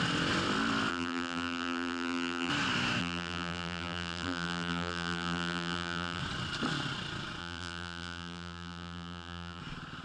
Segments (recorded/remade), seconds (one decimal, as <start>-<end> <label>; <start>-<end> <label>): 0.0-0.9 recorded; 0.9-2.5 remade; 2.5-3.0 recorded; 3.0-6.2 remade; 6.2-7.4 recorded; 7.4-9.6 remade; 9.6-10.0 recorded